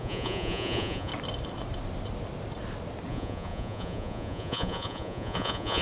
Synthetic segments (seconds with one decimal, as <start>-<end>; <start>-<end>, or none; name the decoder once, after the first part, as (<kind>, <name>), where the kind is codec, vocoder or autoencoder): 0.0-1.1 (vocoder, Vocos); 3.1-5.8